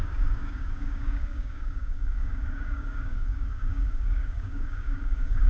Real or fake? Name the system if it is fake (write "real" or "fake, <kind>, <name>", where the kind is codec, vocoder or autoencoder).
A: fake, codec, DAC